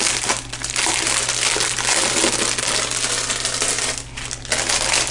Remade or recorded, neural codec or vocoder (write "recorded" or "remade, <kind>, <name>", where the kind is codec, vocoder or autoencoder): recorded